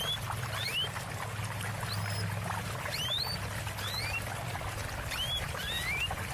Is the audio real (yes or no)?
yes